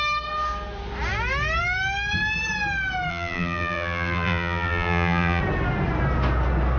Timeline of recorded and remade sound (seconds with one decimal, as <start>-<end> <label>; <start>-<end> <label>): 0.0-3.1 recorded; 3.1-5.4 remade; 5.4-6.8 recorded